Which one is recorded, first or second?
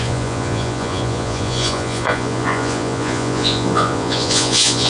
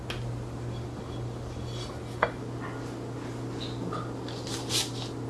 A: second